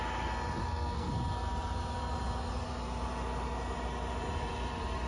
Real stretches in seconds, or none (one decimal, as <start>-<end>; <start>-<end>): 0.0-0.6; 1.1-5.1